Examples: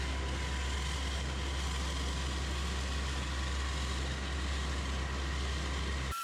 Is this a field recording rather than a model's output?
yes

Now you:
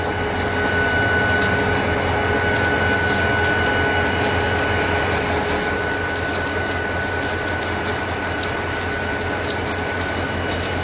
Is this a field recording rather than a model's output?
yes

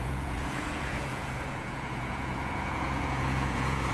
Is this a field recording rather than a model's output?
no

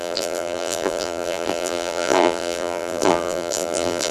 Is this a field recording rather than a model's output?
no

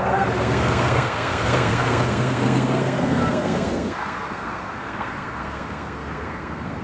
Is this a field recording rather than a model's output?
no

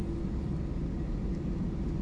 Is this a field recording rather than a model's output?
yes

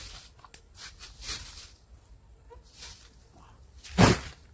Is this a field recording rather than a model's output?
yes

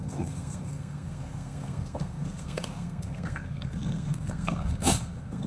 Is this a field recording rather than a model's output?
no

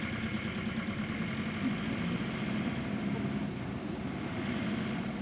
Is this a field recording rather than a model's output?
yes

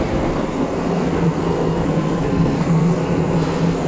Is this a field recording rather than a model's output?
no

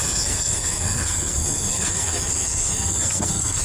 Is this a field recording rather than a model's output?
no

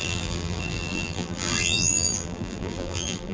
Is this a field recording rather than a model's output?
no